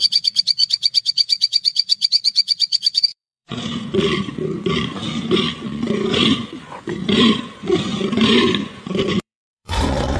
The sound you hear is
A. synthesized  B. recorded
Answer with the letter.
A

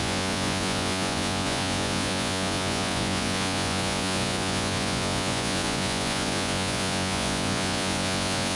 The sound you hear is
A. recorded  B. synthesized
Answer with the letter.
B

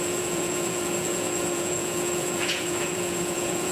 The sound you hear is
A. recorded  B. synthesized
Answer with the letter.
B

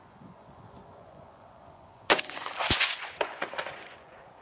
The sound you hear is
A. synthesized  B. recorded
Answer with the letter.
A